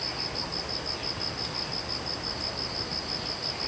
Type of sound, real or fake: real